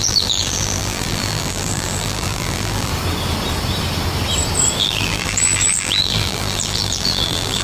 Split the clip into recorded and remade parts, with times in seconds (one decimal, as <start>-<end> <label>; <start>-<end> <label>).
0.0-2.9 remade; 2.9-4.8 recorded; 4.8-7.6 remade